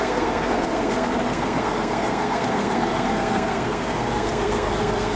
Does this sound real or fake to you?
fake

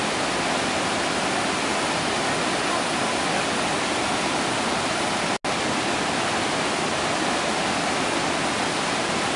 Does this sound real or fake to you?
real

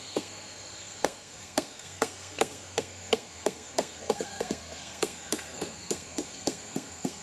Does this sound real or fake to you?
fake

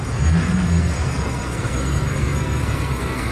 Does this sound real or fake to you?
fake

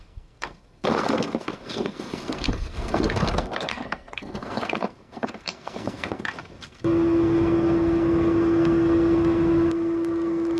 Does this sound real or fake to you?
fake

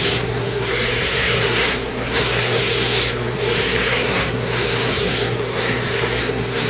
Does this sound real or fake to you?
fake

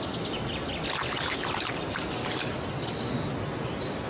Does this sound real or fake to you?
real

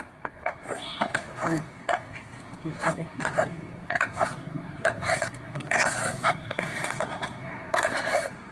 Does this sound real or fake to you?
fake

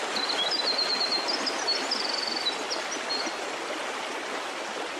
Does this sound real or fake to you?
real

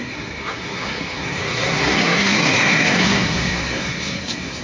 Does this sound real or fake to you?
fake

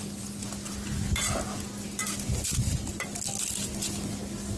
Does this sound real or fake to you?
real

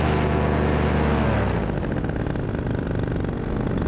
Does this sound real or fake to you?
real